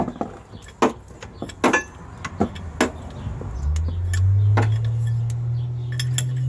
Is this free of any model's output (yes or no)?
yes